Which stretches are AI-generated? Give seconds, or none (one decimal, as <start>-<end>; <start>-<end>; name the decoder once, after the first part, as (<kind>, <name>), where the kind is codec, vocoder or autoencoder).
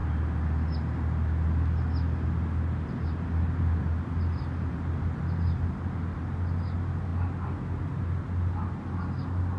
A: none